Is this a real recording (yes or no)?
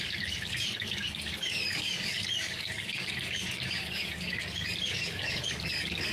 no